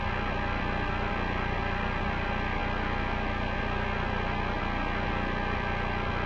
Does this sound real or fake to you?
real